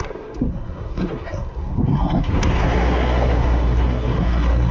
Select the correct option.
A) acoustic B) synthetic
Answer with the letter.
B